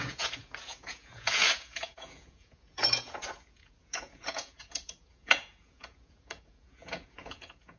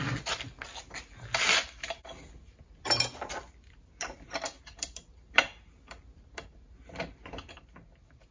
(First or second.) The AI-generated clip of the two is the first